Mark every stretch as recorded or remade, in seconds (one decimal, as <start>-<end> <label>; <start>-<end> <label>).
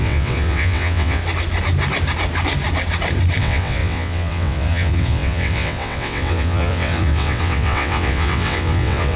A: 0.0-1.2 remade; 1.2-3.4 recorded; 3.4-9.2 remade